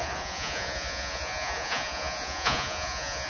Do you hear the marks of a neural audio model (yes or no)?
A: yes